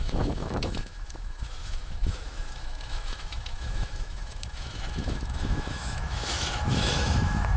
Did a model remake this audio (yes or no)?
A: yes